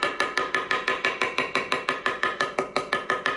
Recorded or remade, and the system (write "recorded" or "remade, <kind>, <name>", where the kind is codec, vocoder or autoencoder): recorded